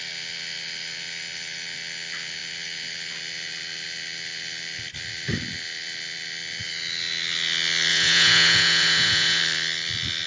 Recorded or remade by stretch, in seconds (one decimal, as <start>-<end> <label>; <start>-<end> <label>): 0.0-7.9 recorded; 7.9-9.4 remade; 9.4-10.3 recorded